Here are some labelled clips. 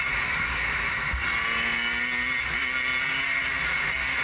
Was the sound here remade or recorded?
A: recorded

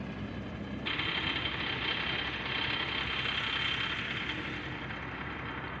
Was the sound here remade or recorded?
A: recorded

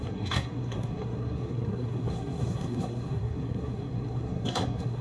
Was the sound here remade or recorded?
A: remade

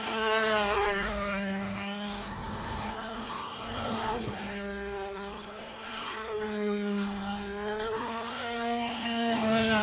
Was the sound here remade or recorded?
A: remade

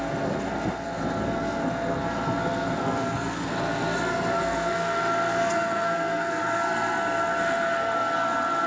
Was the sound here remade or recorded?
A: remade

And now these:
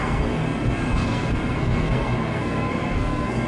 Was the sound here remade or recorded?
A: remade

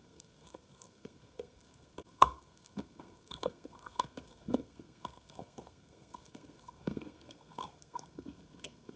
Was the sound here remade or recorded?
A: remade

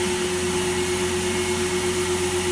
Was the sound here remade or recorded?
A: recorded